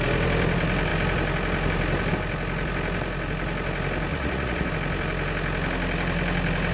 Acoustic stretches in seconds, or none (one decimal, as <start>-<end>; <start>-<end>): 0.0-4.1; 4.7-6.7